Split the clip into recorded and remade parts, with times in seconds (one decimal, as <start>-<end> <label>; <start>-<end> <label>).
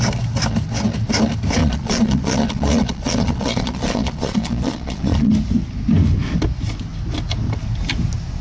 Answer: 0.0-1.6 recorded; 1.6-5.3 remade; 5.3-8.4 recorded